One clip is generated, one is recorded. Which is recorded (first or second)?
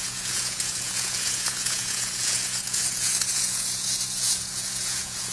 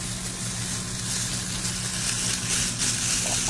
second